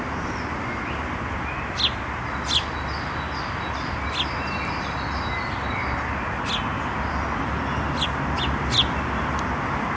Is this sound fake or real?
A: real